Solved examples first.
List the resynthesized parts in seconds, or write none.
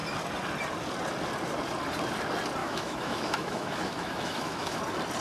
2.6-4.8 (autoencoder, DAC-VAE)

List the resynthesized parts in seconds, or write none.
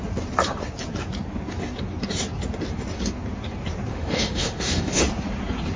3.9-5.0 (autoencoder, DAC-VAE)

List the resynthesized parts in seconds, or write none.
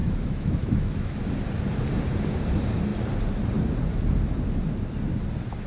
0.0-1.2 (autoencoder, DAC-VAE)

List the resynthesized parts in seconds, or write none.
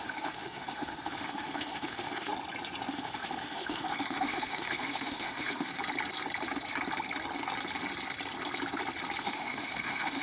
0.0-2.3 (autoencoder, DAC-VAE); 2.9-5.7; 9.2-10.2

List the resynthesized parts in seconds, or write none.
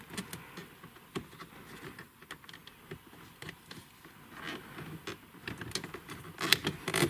none